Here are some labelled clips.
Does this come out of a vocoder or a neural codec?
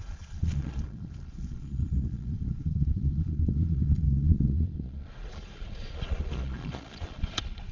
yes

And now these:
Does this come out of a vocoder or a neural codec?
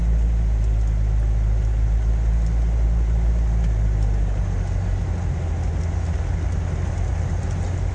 no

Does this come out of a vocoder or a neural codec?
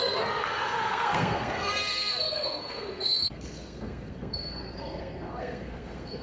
yes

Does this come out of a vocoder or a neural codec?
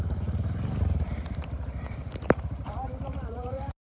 yes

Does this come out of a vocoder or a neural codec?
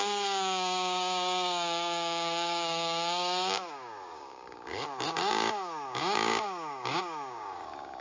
yes